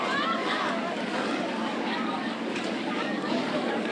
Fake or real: fake